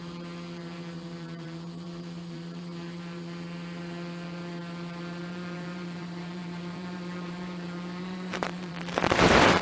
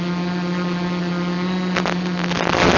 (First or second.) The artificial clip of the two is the first